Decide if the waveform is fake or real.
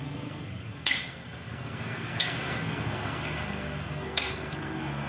fake